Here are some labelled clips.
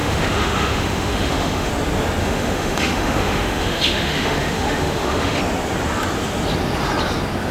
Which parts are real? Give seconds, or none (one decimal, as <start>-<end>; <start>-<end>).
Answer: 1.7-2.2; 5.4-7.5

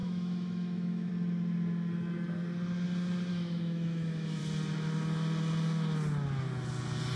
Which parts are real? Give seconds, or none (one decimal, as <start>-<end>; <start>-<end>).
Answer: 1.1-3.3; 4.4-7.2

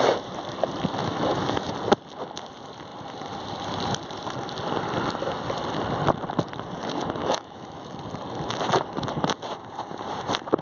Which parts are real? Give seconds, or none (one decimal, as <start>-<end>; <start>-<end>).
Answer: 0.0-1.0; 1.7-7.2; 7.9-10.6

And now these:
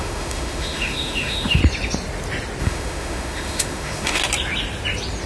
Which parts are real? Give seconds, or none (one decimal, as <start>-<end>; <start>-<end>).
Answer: 1.6-2.6; 4.2-5.3